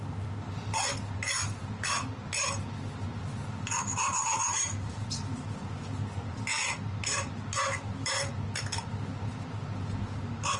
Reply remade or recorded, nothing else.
recorded